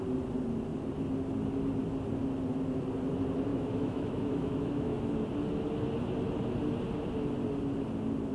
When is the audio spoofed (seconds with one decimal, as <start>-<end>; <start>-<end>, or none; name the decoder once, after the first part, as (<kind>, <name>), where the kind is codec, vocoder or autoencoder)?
3.5-5.1 (autoencoder, DAC-VAE)